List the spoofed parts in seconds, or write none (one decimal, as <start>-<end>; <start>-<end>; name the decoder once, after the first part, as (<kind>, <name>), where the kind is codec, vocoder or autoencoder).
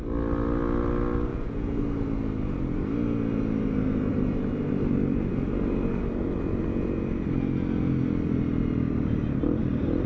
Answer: 1.3-1.8 (vocoder, Vocos)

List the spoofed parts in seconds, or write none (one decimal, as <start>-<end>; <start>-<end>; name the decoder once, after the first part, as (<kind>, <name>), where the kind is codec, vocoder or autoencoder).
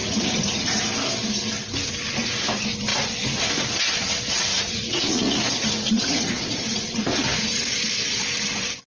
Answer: 0.0-0.9 (vocoder, Vocos); 4.5-7.6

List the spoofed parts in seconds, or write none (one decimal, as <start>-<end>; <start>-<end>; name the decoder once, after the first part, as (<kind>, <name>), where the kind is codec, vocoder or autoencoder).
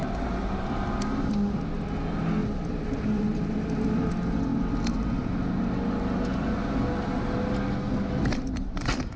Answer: 0.0-0.9 (vocoder, BigVGAN v2); 2.4-4.1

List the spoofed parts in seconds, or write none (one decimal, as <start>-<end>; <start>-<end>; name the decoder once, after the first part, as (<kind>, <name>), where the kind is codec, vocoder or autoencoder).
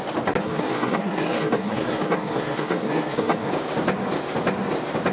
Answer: 0.4-3.5 (codec, SNAC)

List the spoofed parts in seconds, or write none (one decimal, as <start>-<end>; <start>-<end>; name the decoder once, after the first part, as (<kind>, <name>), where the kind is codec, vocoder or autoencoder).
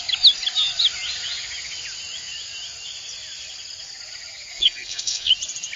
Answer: 4.5-5.3 (codec, SNAC)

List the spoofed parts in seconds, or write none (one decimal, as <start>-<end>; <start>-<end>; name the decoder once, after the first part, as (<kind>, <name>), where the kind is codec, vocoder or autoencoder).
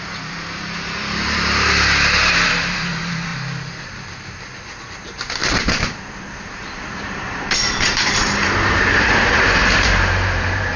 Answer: 0.0-3.3 (vocoder, BigVGAN v2); 4.8-10.8